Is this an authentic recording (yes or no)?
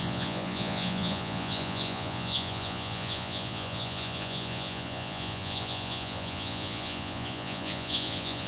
no